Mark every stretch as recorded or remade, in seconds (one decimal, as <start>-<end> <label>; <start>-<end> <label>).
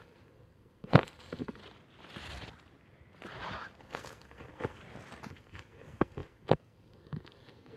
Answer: 0.0-1.6 remade; 1.6-3.8 recorded; 3.8-4.8 remade; 4.8-5.3 recorded; 5.3-7.8 remade